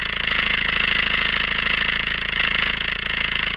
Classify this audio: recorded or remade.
remade